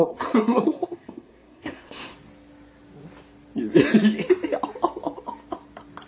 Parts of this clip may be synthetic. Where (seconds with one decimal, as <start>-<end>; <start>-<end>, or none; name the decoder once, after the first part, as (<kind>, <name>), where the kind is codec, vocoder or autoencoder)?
0.0-2.1 (codec, SNAC)

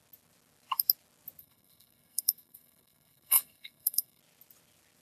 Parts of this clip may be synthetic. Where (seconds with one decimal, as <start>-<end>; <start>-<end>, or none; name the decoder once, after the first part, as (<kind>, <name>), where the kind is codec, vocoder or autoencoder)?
1.4-4.2 (codec, SNAC)